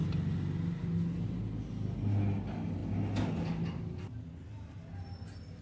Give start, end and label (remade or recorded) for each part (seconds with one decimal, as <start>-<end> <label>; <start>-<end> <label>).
0.0-5.6 recorded

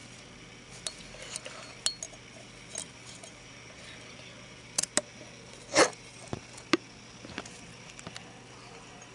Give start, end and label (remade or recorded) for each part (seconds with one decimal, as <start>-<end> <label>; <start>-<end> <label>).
0.0-9.1 recorded

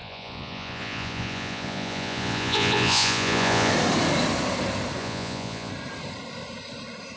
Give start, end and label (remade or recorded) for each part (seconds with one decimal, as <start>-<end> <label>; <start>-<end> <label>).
0.0-3.7 remade; 3.7-5.0 recorded; 5.0-5.7 remade; 5.7-7.2 recorded